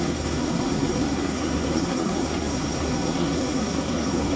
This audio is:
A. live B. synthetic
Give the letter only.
B